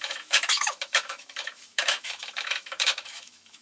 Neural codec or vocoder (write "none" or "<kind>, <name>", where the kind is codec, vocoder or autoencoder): autoencoder, DAC-VAE